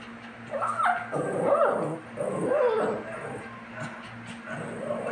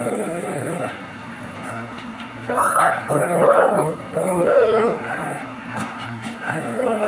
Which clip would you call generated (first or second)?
second